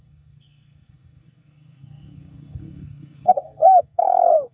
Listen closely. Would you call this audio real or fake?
fake